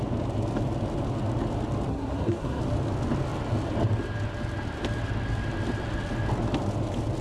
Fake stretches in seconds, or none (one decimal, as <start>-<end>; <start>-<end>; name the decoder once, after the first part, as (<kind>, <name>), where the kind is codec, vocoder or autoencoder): 1.9-2.6 (codec, SNAC)